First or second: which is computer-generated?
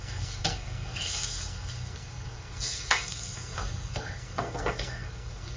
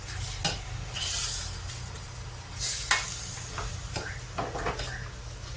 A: first